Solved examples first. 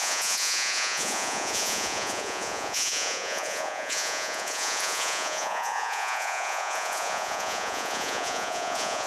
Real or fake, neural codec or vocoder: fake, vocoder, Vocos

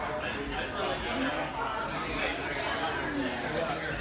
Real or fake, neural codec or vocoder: real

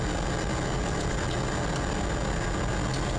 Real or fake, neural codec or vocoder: real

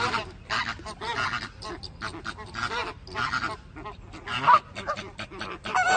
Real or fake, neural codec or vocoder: real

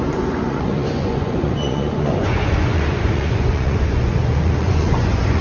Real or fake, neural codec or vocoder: fake, vocoder, Vocos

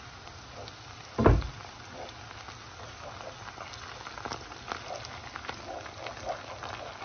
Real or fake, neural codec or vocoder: real